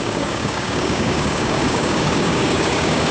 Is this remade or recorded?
remade